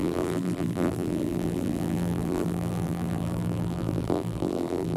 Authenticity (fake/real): fake